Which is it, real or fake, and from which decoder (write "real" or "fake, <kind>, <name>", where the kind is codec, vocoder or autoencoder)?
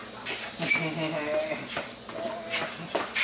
real